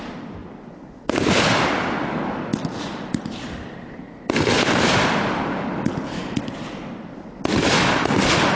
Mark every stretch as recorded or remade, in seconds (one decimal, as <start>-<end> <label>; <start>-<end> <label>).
0.0-8.6 recorded